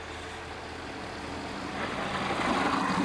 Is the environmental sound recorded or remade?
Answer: recorded